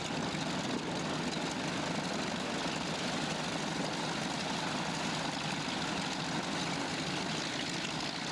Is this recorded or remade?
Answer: recorded